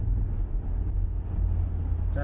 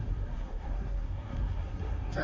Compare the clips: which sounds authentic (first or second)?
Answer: first